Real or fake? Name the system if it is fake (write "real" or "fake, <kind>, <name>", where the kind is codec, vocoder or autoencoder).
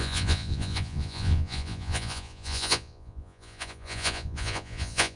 fake, vocoder, Vocos